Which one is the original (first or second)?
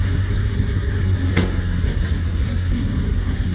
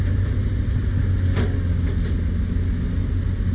second